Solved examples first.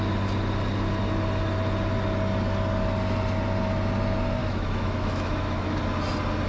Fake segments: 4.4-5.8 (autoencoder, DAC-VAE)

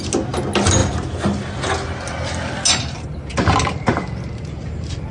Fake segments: none

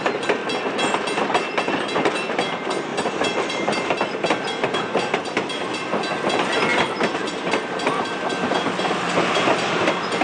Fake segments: 0.0-0.4 (vocoder, BigVGAN v2); 2.0-10.2

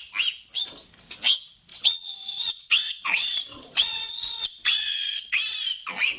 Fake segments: 1.7-5.4 (vocoder, WaveNeXt)

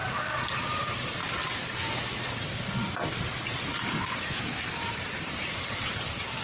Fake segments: 0.5-1.2 (vocoder, BigVGAN v2); 4.9-6.4

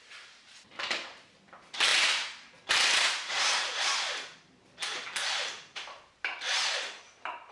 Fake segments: none

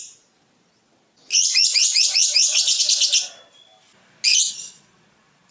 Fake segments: 1.3-2.8 (vocoder, Vocos); 4.3-5.5